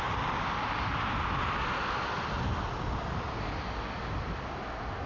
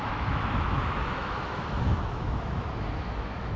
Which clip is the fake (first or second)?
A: second